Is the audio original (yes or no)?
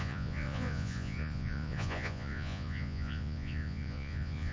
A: no